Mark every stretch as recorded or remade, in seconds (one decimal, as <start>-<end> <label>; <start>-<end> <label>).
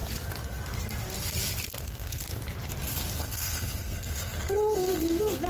0.0-1.8 recorded; 1.8-2.2 remade; 2.2-3.2 recorded; 3.2-5.5 remade